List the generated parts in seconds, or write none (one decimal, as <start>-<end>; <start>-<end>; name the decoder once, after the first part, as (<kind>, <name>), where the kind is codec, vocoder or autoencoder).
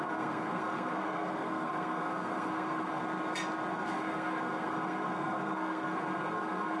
0.0-3.0 (codec, SNAC); 3.7-6.8